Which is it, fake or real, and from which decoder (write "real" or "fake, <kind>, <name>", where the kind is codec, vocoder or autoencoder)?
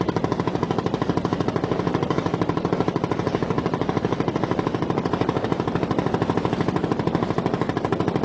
real